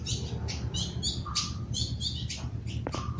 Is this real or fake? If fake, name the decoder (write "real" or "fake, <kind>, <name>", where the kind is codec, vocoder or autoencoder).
real